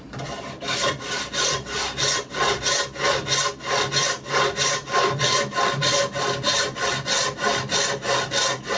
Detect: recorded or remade recorded